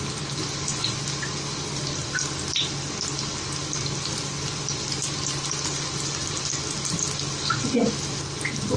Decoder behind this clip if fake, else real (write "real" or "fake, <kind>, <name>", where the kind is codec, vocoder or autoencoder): real